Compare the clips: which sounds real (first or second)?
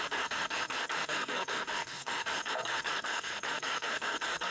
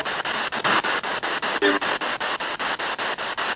second